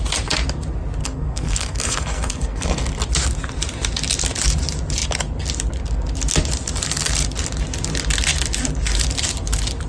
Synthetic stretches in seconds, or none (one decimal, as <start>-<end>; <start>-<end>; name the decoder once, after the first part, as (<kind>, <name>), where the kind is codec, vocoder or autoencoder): 1.0-2.8 (codec, SNAC)